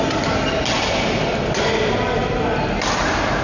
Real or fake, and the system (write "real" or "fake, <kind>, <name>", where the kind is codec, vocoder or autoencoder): real